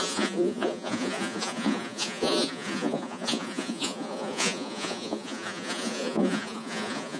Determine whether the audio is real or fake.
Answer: fake